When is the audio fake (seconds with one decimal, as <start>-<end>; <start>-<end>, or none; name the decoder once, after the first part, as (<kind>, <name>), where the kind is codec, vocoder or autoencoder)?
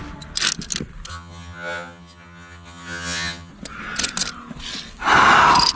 1.1-3.5 (vocoder, HiFi-GAN)